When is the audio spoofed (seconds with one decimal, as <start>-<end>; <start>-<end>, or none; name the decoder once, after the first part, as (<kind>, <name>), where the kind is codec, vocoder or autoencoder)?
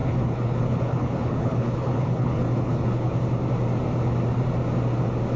0.0-3.2 (codec, HILCodec)